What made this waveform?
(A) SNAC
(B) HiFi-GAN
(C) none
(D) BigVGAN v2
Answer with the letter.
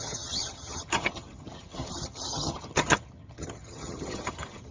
B